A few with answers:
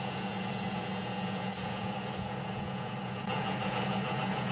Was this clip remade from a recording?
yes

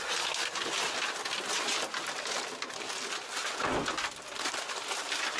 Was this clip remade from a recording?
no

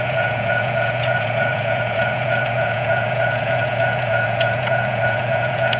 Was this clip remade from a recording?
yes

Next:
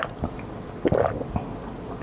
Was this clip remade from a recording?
no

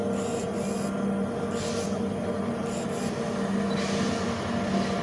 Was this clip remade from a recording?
no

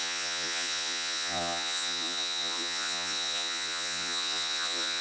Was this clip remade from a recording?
yes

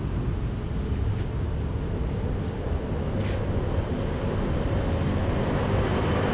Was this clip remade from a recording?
no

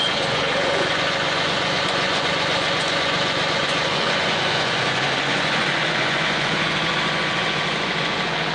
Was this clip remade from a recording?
yes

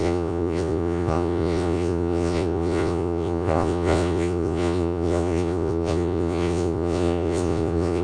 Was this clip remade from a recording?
yes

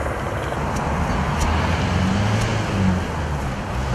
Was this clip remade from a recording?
no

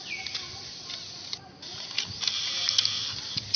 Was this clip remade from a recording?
no